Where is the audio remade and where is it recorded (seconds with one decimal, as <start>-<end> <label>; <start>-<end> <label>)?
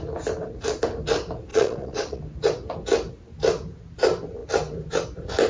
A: 0.0-1.5 recorded; 1.5-2.2 remade; 2.2-5.5 recorded